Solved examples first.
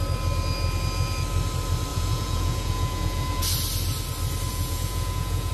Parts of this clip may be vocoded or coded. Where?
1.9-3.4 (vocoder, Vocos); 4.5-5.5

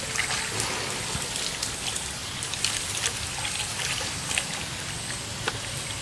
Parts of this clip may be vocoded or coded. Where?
none